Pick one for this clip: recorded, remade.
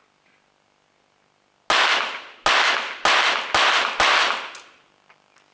recorded